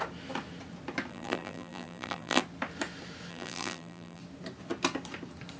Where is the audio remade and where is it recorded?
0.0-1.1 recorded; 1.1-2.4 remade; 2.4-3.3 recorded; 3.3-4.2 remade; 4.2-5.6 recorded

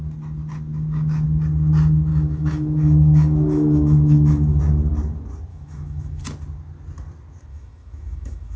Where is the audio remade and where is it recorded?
0.0-2.1 recorded; 2.1-4.6 remade; 4.6-5.5 recorded; 5.5-6.2 remade; 6.2-7.5 recorded; 7.5-8.6 remade

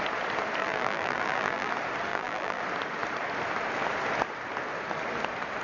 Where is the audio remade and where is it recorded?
0.0-0.6 recorded; 0.6-1.7 remade; 1.7-2.1 recorded; 2.1-2.6 remade; 2.6-5.6 recorded

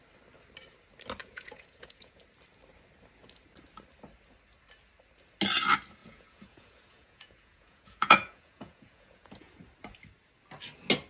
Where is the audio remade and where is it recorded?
0.0-1.2 recorded; 1.2-2.2 remade; 2.2-6.0 recorded; 6.0-9.5 remade; 9.5-11.1 recorded

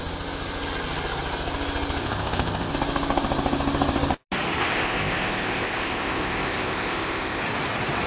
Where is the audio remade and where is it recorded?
0.0-2.0 recorded; 2.0-2.7 remade; 2.7-4.6 recorded; 4.6-7.4 remade; 7.4-8.1 recorded

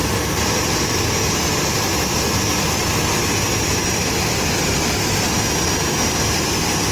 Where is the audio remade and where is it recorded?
0.0-6.9 recorded